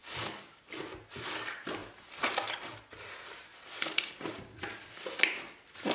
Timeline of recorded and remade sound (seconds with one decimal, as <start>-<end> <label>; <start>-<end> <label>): 0.0-0.6 remade; 0.6-5.9 recorded